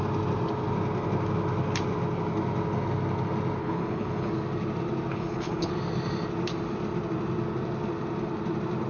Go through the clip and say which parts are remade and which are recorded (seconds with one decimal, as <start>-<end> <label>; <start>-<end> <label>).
0.0-3.6 recorded; 3.6-4.3 remade; 4.3-5.1 recorded; 5.1-5.7 remade; 5.7-8.9 recorded